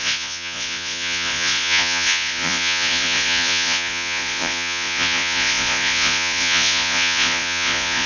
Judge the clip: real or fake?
fake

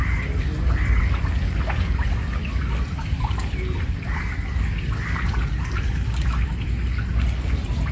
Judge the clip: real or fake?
real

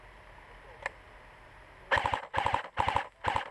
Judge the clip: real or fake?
real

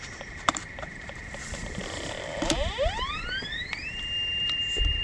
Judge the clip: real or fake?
fake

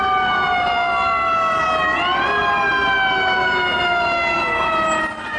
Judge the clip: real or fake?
real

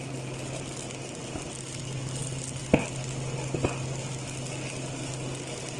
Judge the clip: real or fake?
real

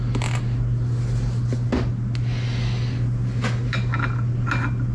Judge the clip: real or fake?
real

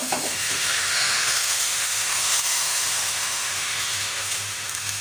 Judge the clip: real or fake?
fake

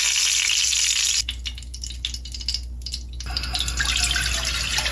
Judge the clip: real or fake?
real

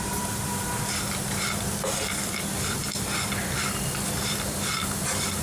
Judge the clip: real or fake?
fake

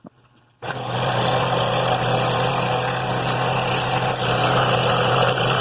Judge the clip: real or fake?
real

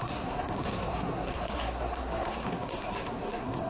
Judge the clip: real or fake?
fake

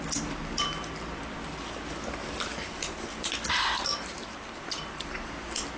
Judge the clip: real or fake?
real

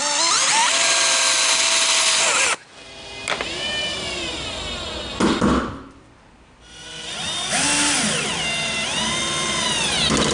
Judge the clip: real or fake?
real